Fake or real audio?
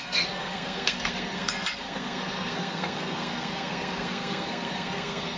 fake